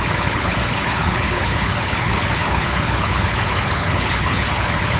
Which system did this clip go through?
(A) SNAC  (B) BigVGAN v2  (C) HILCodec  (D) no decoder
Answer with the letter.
C